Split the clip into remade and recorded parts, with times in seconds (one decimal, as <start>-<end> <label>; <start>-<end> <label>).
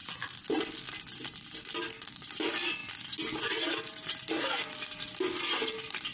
0.0-6.1 remade